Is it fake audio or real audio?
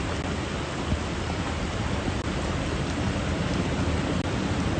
real